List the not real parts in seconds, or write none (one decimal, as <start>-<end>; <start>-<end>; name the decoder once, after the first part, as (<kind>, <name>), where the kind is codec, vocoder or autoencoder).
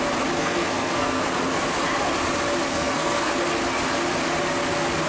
0.4-1.2 (codec, SNAC); 2.7-3.3